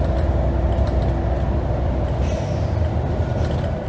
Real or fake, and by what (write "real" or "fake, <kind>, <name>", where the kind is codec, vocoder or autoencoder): real